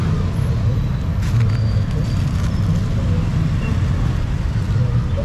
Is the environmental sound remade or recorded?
recorded